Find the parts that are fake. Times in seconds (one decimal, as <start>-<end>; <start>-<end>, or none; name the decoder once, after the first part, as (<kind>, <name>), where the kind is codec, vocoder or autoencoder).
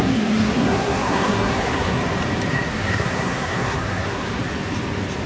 0.0-2.0 (codec, SNAC); 2.5-4.4